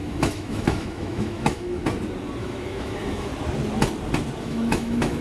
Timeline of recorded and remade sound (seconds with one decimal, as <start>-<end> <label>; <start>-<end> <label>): 0.0-1.8 remade; 1.8-2.4 recorded; 2.4-3.3 remade; 3.3-4.4 recorded; 4.4-5.2 remade